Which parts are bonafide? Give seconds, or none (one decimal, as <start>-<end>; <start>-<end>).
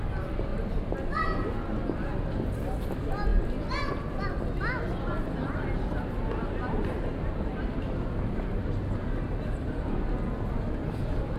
0.0-0.5; 1.4-11.4